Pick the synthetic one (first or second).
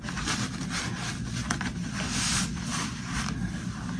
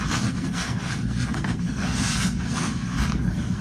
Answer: second